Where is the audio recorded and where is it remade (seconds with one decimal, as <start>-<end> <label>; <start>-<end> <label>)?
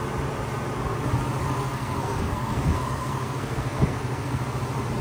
0.0-1.4 recorded; 1.4-4.4 remade; 4.4-5.0 recorded